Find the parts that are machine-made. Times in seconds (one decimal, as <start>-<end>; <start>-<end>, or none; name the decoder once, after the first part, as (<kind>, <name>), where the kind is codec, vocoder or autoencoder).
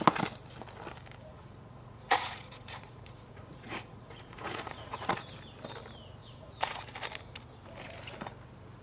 1.3-5.3 (vocoder, Vocos); 6.2-6.8